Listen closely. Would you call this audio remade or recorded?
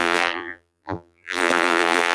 remade